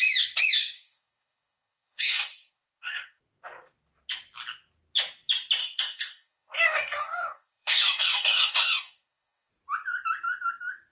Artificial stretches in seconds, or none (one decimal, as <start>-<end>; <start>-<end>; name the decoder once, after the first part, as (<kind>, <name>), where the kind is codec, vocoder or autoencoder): 0.6-3.2 (codec, DAC); 5.6-9.5